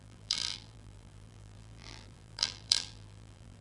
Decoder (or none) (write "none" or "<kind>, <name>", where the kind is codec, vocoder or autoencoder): vocoder, BigVGAN v2